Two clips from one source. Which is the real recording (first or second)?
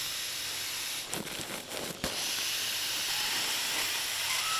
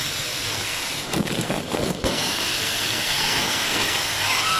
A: first